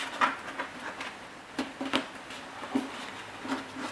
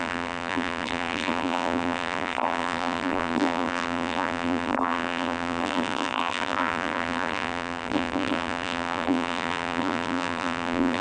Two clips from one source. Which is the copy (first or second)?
second